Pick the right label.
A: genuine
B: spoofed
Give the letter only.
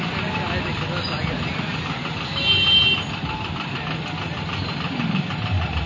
A